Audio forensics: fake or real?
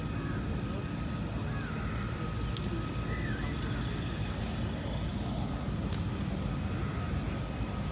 real